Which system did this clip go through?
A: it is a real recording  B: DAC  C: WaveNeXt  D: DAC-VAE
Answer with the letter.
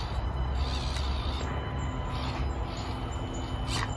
A